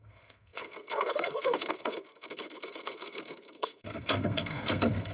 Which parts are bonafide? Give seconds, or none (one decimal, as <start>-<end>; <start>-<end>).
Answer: none